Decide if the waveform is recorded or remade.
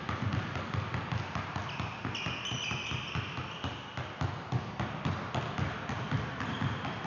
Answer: recorded